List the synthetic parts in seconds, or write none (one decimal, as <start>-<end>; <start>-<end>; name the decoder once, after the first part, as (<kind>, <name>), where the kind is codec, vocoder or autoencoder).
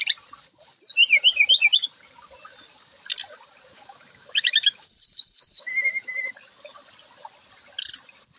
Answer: 3.7-6.3 (autoencoder, DAC-VAE)